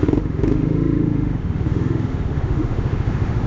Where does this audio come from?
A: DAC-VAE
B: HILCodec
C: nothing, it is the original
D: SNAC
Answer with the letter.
A